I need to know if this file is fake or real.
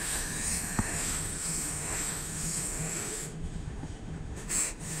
fake